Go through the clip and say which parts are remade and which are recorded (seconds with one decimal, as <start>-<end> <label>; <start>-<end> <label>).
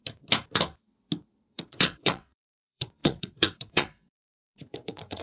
0.0-1.4 recorded; 1.4-5.2 remade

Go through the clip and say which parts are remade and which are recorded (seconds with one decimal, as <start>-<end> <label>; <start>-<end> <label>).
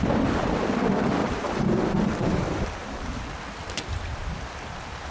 0.0-1.2 recorded; 1.2-3.1 remade; 3.1-5.1 recorded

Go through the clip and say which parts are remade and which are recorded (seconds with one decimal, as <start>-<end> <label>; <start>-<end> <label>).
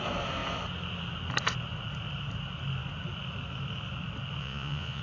0.0-4.4 recorded; 4.4-5.0 remade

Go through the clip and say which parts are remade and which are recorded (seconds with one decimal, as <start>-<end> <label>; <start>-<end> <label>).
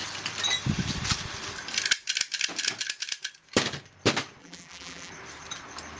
0.0-4.4 recorded; 4.4-5.1 remade; 5.1-6.0 recorded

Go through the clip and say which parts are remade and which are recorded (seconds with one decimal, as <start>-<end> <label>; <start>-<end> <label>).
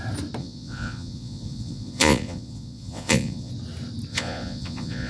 0.0-0.4 recorded; 0.4-3.5 remade; 3.5-4.1 recorded; 4.1-5.1 remade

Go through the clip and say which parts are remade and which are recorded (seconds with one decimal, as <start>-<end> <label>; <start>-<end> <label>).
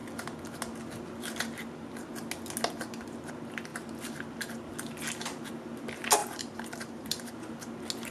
0.0-6.2 recorded; 6.2-7.3 remade; 7.3-8.1 recorded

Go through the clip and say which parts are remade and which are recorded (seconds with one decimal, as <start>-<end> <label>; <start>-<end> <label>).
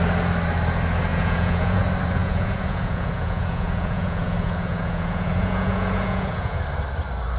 0.0-1.1 recorded; 1.1-1.8 remade; 1.8-2.2 recorded; 2.2-6.6 remade; 6.6-7.4 recorded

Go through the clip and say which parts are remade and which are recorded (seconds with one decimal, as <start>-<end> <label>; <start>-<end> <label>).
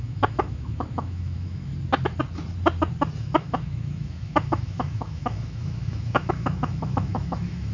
0.0-1.7 remade; 1.7-3.2 recorded; 3.2-7.7 remade